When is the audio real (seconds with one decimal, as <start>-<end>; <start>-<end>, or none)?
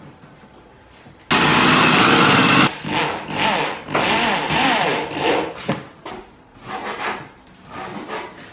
0.0-4.9; 5.4-8.5